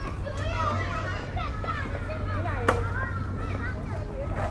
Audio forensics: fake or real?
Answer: real